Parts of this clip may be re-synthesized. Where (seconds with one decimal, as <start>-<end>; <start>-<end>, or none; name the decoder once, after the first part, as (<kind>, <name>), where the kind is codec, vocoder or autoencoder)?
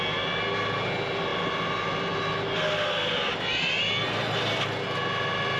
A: none